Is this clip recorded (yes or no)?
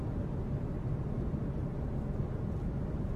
yes